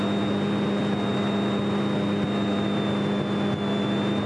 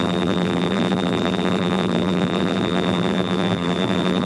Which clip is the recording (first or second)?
first